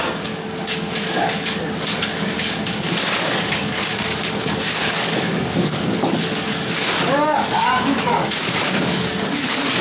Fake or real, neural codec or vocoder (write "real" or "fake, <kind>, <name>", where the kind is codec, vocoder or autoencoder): fake, codec, DAC